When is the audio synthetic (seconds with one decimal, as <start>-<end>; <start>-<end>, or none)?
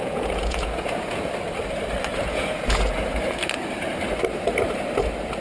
0.0-1.3; 2.1-3.1